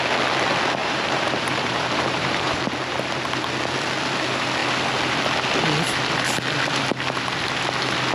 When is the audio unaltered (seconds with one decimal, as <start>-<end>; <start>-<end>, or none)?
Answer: 0.0-0.8; 2.6-8.1